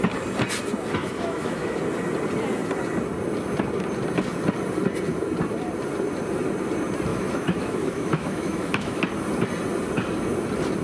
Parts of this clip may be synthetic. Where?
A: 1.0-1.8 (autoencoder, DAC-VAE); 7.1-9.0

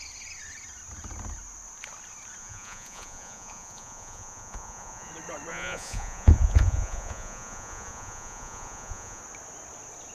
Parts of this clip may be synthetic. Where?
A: 2.4-5.1 (vocoder, Vocos); 5.5-9.2

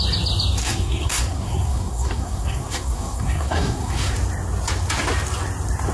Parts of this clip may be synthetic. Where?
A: 0.6-4.1 (codec, SNAC)